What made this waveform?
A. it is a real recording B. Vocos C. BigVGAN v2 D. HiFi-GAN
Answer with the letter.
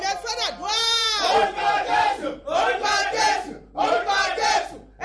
C